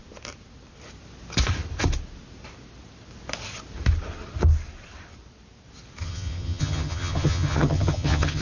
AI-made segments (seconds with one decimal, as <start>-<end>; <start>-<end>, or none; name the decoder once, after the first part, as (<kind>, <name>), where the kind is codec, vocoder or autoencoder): 6.0-8.4 (vocoder, HiFi-GAN)